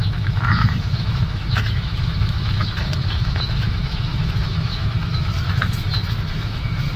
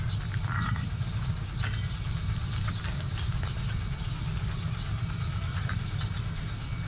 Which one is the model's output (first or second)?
first